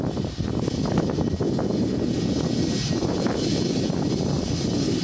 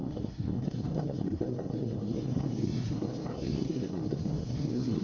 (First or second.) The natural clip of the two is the first